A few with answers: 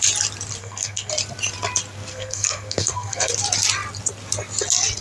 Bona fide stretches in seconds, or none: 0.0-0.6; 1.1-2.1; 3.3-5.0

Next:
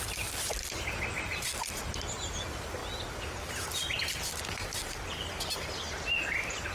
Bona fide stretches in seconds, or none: 0.0-6.7

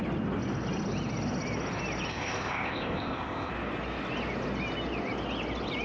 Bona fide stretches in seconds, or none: 0.0-2.1; 3.5-5.8